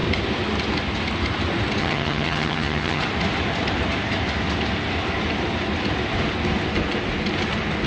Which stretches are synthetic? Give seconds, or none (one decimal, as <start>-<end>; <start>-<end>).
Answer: 1.8-3.0